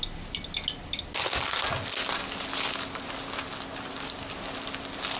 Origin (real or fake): real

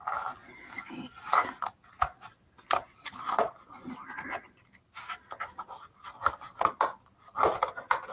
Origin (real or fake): real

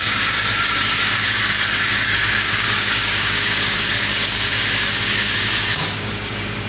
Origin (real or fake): fake